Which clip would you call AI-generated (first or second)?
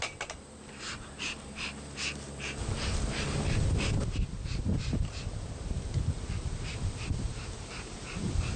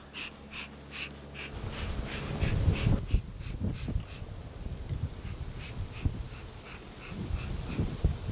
first